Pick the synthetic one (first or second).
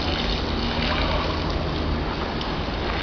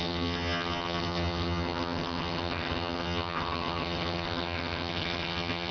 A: second